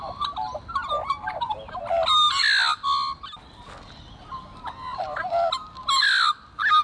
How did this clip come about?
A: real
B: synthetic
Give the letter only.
A